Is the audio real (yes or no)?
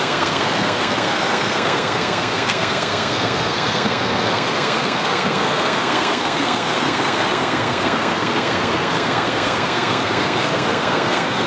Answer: no